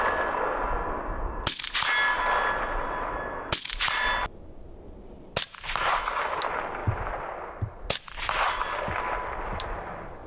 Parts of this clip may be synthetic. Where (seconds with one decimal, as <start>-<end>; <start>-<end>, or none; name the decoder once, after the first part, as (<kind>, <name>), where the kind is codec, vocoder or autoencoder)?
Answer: none